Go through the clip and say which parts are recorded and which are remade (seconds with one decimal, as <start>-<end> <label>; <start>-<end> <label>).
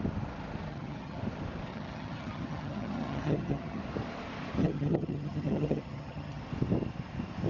0.0-0.7 recorded; 0.7-1.2 remade; 1.2-1.7 recorded; 1.7-3.8 remade; 3.8-4.6 recorded; 4.6-6.4 remade; 6.4-7.5 recorded